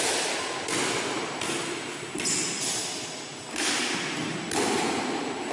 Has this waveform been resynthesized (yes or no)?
no